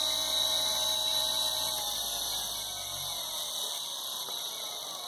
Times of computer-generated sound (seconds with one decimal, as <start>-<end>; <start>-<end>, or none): 0.0-2.6